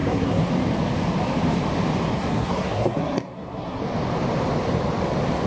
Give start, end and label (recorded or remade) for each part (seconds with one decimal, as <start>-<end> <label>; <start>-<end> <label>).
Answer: 0.0-0.5 remade; 0.5-2.1 recorded; 2.1-3.8 remade; 3.8-5.5 recorded